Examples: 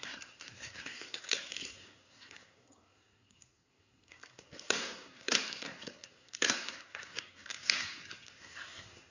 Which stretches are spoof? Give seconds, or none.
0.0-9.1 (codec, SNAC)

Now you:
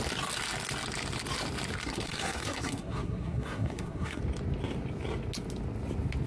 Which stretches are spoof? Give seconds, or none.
1.8-4.2 (codec, SNAC)

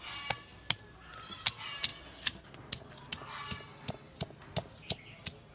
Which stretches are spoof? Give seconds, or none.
none

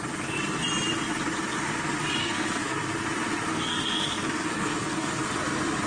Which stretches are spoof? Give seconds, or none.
2.2-2.8 (codec, SNAC); 3.5-5.1

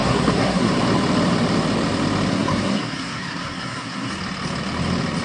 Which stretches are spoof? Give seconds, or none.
0.0-0.7 (codec, SNAC); 2.3-4.1

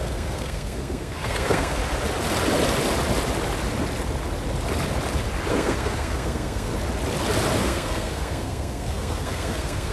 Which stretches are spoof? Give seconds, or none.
0.0-1.8 (codec, SNAC); 5.5-6.7; 7.6-9.9

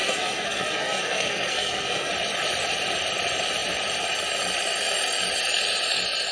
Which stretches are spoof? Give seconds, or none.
0.0-2.1 (codec, SNAC)

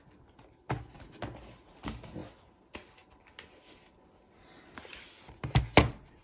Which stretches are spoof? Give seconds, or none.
none